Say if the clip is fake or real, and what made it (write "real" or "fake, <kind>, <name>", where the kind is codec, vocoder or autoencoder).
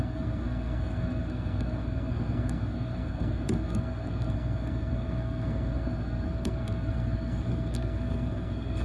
fake, codec, SNAC